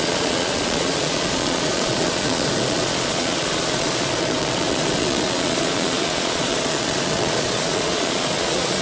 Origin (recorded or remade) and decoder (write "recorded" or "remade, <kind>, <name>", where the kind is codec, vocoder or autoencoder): remade, vocoder, Vocos